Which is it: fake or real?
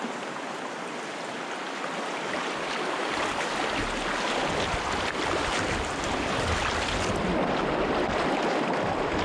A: real